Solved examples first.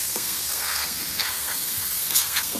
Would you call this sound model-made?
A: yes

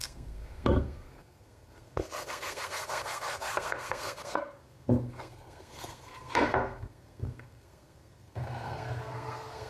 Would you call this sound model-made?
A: yes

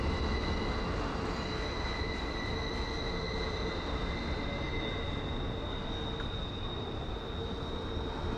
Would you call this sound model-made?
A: no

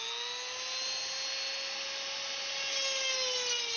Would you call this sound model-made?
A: no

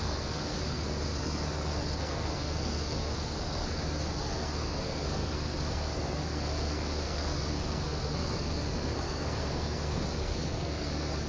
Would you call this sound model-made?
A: yes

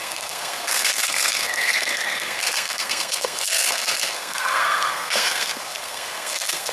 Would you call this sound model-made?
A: yes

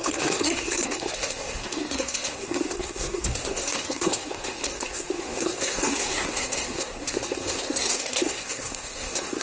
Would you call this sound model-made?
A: yes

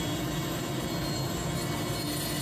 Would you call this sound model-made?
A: no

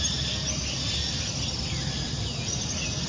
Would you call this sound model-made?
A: no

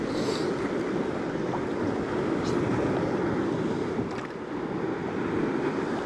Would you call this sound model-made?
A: no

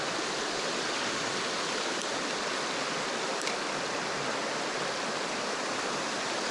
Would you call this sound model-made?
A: no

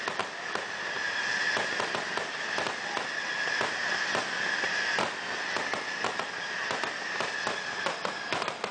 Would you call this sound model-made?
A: no